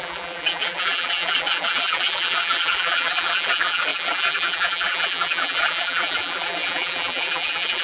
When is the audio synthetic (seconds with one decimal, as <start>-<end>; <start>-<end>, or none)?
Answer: 0.0-7.8